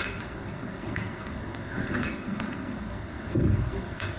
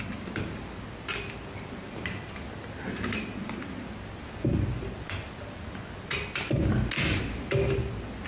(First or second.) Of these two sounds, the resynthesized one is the first